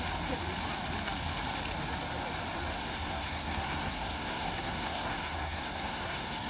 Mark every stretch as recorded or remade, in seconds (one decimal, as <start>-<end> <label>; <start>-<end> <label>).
0.0-2.7 recorded; 2.7-6.5 remade